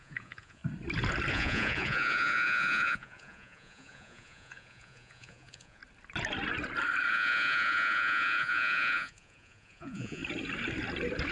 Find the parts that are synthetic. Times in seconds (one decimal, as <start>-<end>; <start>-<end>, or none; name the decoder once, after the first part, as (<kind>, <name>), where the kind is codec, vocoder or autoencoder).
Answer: 0.0-0.6 (vocoder, Vocos); 1.3-5.8; 7.1-10.2